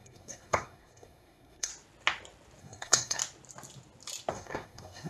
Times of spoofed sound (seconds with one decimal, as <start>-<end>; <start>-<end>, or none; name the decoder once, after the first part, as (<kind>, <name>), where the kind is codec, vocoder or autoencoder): 0.0-1.7 (codec, SNAC); 2.6-3.2; 4.3-5.1